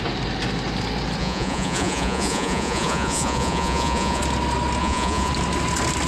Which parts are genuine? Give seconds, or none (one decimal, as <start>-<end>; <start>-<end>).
0.0-1.2; 4.2-4.8; 5.3-6.1